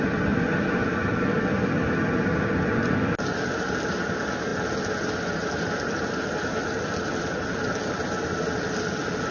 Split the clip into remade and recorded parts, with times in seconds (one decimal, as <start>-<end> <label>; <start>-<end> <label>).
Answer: 0.0-9.3 recorded